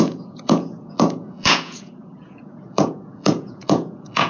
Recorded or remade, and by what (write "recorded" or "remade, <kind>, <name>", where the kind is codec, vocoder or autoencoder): remade, vocoder, Vocos